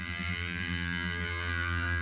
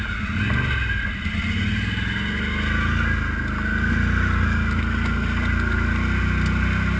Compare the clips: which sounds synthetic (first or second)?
first